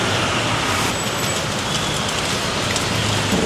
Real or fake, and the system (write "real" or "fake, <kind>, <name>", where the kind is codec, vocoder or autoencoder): real